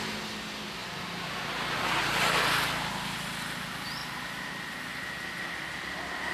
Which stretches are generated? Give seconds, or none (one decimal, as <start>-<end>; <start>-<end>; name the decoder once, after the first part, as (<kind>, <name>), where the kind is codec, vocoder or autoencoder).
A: none